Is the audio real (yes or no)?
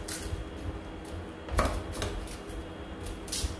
yes